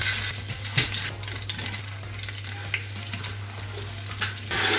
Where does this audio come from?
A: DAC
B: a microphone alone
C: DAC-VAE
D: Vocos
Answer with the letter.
B